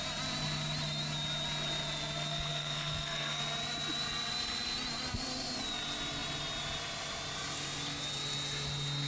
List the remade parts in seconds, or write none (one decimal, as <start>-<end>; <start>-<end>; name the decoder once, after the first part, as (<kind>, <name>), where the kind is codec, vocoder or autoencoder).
2.3-3.4 (codec, SNAC)